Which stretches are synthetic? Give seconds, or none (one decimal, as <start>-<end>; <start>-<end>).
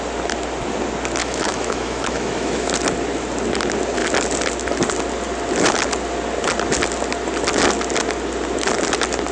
1.2-2.7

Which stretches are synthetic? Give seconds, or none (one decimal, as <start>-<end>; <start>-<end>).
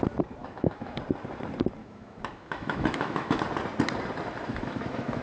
0.4-1.0; 1.8-3.4; 4.5-5.2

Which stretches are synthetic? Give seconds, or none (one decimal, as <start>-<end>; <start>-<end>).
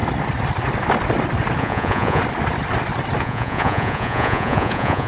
1.6-2.2; 3.2-5.1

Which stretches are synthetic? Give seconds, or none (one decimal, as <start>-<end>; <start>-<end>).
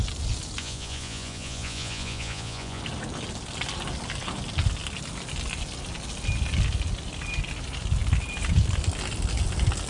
0.6-2.8